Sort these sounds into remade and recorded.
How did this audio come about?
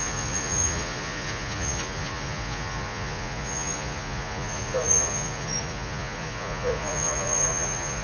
remade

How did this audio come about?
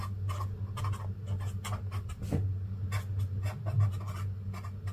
recorded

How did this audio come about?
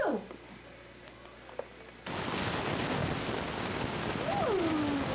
recorded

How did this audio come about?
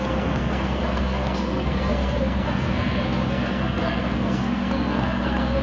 remade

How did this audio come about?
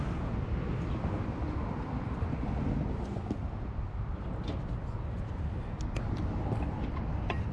recorded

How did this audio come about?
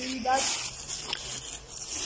recorded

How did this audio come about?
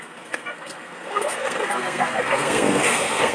remade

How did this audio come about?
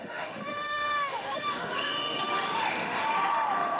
remade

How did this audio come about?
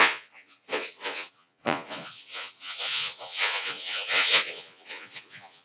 remade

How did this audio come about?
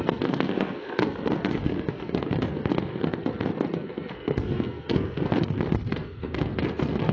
remade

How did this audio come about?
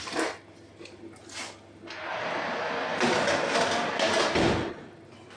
recorded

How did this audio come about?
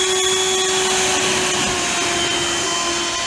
recorded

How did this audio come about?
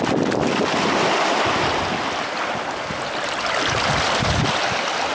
recorded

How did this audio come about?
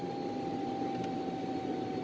recorded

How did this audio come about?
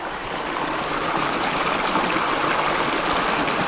recorded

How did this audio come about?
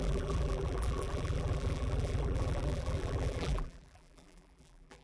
remade